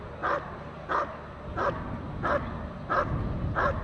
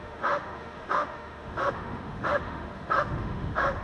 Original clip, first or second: first